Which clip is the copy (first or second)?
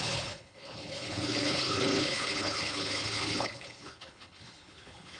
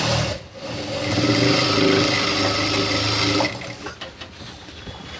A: first